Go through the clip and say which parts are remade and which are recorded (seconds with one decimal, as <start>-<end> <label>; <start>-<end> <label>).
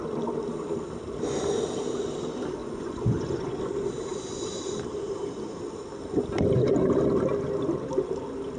0.0-2.6 recorded; 2.6-3.6 remade; 3.6-8.6 recorded